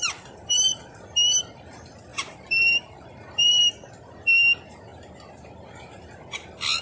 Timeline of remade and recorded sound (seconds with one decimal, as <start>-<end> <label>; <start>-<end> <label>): 0.0-2.1 recorded; 2.1-3.6 remade; 3.6-6.8 recorded